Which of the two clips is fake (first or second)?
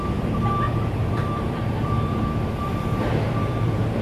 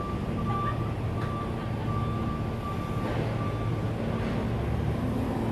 first